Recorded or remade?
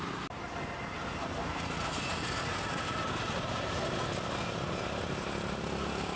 recorded